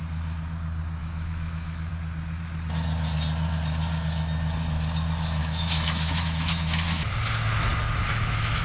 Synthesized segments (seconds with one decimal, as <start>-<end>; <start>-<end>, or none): 1.0-1.9; 5.4-7.1; 7.7-8.6